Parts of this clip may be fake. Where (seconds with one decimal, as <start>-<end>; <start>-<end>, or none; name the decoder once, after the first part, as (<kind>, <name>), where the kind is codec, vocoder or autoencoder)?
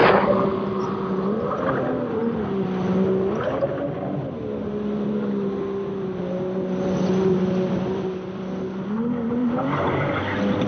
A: 9.4-10.2 (vocoder, BigVGAN v2)